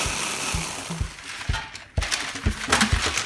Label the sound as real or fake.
real